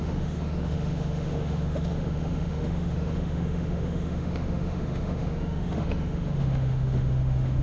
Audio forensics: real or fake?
fake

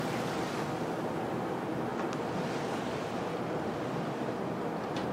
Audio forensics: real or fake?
real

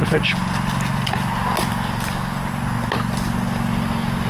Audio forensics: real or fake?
real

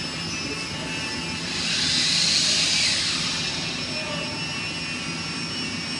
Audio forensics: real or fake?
real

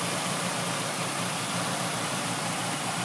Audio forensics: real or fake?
real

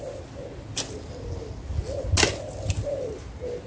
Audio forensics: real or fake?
real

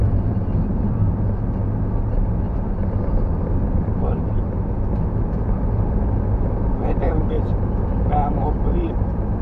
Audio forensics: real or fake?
real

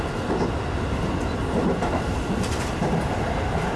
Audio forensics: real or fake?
real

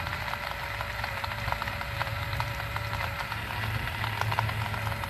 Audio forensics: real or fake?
real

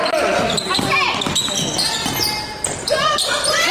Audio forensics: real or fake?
real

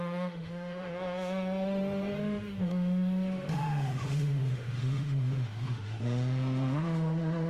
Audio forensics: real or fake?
fake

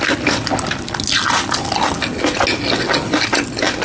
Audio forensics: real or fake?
real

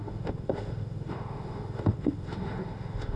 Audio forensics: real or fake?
fake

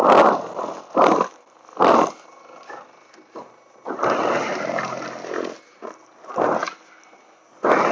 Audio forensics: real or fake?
real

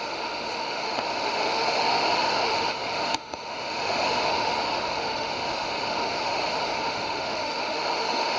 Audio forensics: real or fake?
fake